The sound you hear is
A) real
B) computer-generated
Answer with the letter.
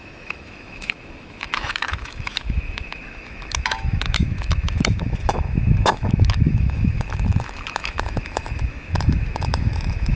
B